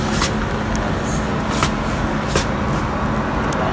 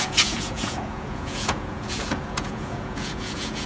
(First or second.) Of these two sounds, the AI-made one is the second